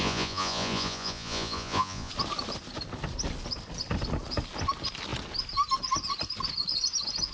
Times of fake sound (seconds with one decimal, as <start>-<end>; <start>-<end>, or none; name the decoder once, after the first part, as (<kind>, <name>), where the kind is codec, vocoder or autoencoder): 0.0-2.1 (vocoder, Vocos)

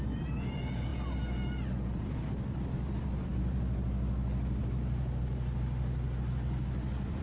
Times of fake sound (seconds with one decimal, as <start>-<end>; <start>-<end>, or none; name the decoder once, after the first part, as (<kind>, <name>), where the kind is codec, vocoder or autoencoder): 0.0-7.2 (vocoder, BigVGAN v2)

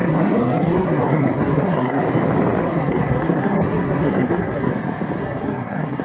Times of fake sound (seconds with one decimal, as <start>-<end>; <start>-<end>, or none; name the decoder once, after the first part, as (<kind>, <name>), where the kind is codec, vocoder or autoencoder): 0.0-2.0 (codec, SNAC); 2.6-4.7; 5.2-6.0

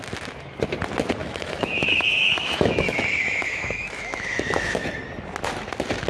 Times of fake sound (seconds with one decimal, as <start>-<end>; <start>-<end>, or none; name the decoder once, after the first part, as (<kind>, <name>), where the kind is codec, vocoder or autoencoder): 1.2-4.9 (autoencoder, DAC-VAE)

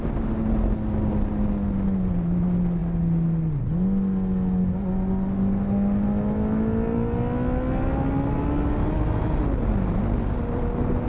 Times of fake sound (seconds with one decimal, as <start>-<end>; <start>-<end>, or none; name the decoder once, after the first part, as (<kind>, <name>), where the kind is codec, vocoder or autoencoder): none

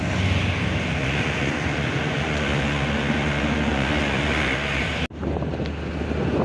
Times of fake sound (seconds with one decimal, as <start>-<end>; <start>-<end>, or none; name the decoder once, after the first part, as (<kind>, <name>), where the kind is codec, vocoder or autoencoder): 1.0-4.8 (vocoder, Vocos)

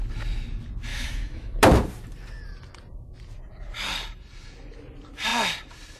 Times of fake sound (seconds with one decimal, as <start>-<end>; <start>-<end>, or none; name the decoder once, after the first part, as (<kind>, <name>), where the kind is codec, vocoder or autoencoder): 0.9-1.6 (autoencoder, DAC-VAE)

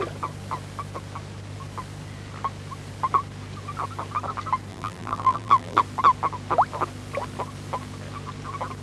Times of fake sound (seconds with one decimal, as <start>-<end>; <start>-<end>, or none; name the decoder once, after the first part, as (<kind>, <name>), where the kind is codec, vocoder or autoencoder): 4.7-5.8 (vocoder, BigVGAN v2)